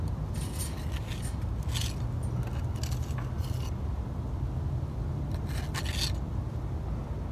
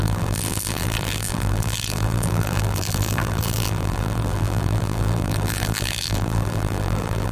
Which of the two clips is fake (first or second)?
second